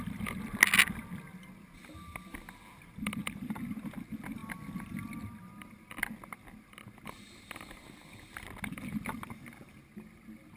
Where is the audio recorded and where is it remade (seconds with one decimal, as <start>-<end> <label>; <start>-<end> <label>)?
0.0-10.6 recorded